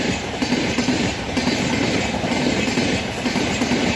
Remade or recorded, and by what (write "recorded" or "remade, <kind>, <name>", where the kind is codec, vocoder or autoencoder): remade, vocoder, BigVGAN v2